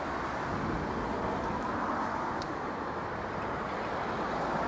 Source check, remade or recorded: recorded